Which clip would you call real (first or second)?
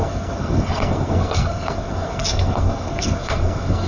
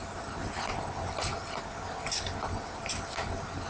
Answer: second